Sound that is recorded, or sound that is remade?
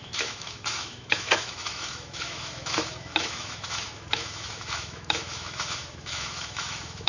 remade